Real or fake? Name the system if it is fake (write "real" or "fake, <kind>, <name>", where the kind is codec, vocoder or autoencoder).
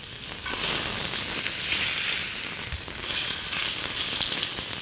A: real